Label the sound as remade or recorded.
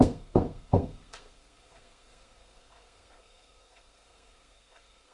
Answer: remade